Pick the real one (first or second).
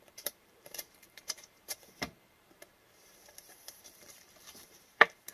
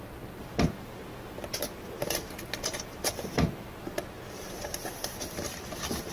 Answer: second